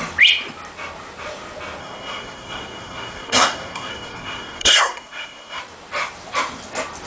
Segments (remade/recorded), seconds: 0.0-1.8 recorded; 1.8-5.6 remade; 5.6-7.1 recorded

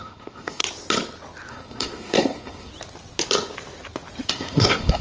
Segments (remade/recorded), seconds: 0.0-0.6 remade; 0.6-1.5 recorded; 1.5-2.7 remade; 2.7-4.3 recorded; 4.3-5.0 remade

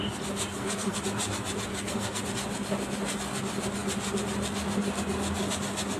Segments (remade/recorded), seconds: 0.0-0.5 recorded; 0.5-1.0 remade; 1.0-1.7 recorded; 1.7-2.2 remade; 2.2-6.0 recorded

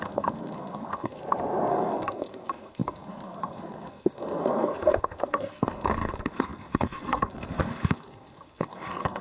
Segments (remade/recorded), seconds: 0.0-1.2 remade; 1.2-1.7 recorded; 1.7-9.2 remade

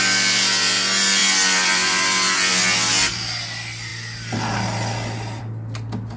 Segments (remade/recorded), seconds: 0.0-6.2 recorded